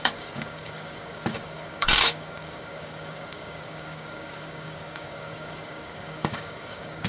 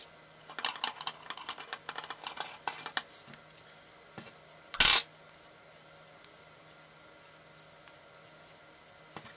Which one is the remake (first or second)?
first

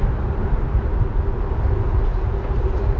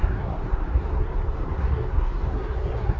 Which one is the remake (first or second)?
second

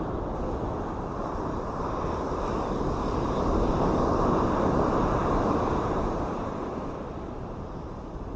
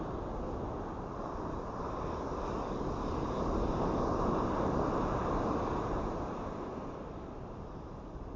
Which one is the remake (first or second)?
first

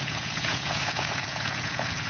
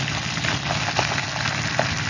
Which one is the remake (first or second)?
first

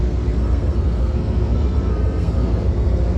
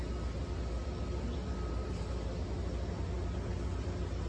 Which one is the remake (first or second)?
first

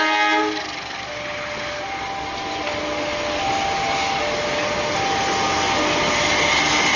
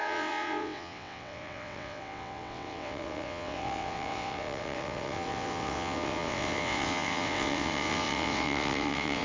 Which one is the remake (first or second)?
second